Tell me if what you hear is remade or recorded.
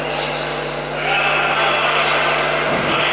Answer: recorded